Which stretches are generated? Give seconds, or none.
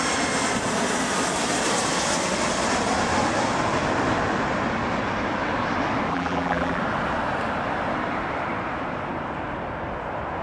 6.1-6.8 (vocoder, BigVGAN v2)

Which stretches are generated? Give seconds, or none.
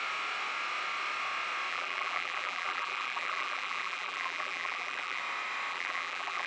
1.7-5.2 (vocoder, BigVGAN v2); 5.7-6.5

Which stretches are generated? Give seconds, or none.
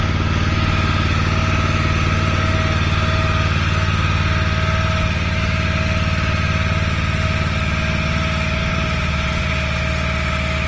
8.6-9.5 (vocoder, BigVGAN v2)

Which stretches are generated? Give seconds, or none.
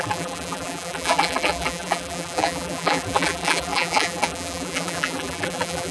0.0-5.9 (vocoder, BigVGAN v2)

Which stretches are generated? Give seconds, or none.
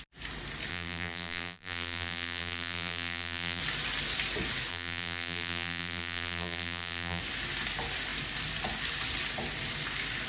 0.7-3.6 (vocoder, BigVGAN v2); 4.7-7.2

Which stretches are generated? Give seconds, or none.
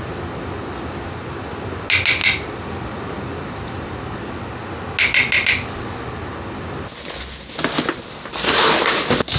2.2-4.4 (vocoder, BigVGAN v2)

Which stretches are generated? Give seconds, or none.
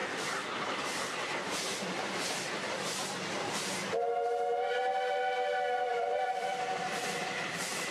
2.3-3.7 (vocoder, BigVGAN v2); 5.8-7.9